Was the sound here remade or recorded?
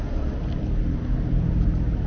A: recorded